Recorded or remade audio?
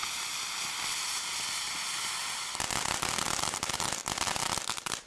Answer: recorded